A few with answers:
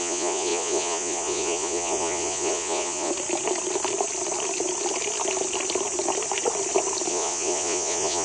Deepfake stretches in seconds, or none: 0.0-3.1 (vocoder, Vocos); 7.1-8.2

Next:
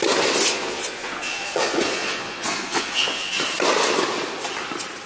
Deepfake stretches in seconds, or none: 0.5-3.4 (vocoder, Vocos)

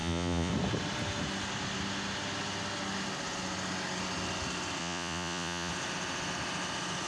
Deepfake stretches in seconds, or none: 0.0-0.5 (vocoder, Vocos); 4.8-5.7

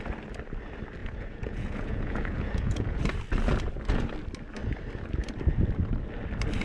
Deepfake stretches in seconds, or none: 1.0-3.0 (vocoder, Vocos)

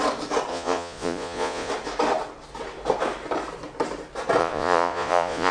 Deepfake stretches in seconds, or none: 0.5-1.7 (vocoder, Vocos); 4.4-5.5

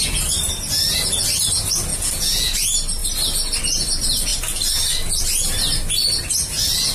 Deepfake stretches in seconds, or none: 1.9-2.5 (vocoder, Vocos)

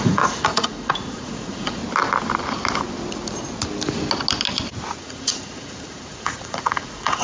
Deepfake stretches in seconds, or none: 0.0-1.8 (vocoder, Vocos); 5.0-7.2